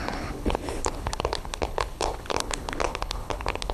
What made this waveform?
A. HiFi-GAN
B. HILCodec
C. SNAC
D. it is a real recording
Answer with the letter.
B